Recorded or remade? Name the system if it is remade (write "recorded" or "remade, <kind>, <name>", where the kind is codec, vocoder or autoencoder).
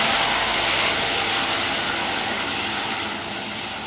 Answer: recorded